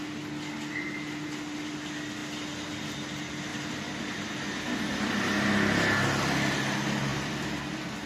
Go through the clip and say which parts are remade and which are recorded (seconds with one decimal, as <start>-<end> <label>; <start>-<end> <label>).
0.0-7.1 recorded; 7.1-7.6 remade; 7.6-8.1 recorded